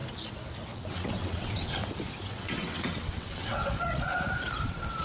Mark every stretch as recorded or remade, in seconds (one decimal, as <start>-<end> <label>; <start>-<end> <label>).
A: 0.0-0.6 recorded; 0.6-1.8 remade; 1.8-2.3 recorded; 2.3-4.1 remade; 4.1-4.6 recorded; 4.6-5.0 remade